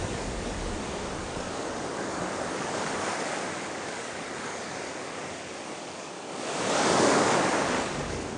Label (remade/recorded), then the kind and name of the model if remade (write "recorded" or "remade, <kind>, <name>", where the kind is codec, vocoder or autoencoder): remade, codec, DAC